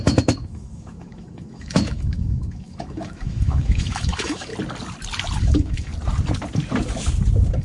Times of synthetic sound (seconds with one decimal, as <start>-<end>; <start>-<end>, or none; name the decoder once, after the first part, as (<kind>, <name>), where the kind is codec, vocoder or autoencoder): 0.0-4.5 (autoencoder, DAC-VAE); 5.4-5.9